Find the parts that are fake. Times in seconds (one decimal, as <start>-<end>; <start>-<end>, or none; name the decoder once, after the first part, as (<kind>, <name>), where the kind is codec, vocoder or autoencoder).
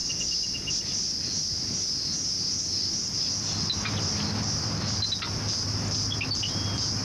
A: none